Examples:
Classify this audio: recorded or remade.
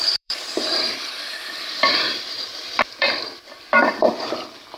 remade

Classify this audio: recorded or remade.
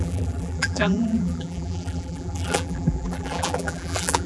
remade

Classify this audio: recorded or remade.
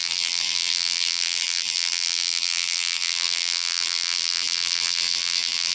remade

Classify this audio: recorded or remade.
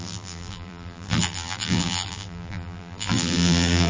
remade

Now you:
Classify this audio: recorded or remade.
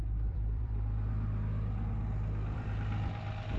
remade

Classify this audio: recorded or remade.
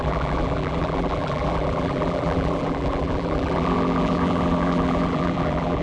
remade